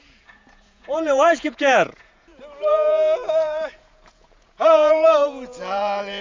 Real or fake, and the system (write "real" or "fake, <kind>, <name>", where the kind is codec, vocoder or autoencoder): fake, vocoder, Vocos